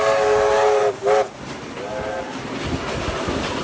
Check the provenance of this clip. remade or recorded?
recorded